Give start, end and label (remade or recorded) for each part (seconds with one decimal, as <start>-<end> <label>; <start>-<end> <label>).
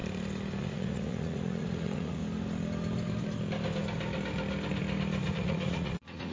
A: 0.0-0.6 recorded; 0.6-2.2 remade; 2.2-5.3 recorded; 5.3-6.3 remade